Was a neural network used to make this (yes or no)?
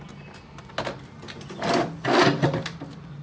no